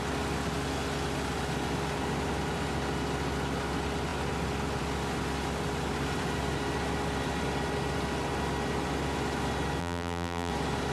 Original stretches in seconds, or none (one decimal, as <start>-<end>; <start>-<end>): 0.0-9.8; 10.5-10.9